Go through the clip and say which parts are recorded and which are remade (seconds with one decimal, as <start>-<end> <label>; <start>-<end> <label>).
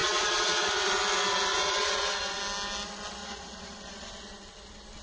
0.0-0.7 remade; 0.7-1.5 recorded; 1.5-2.4 remade; 2.4-3.2 recorded; 3.2-4.1 remade; 4.1-5.0 recorded